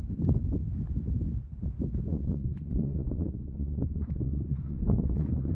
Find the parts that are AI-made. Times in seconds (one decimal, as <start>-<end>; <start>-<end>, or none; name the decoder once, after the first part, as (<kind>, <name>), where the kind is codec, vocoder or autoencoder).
2.1-5.5 (vocoder, Vocos)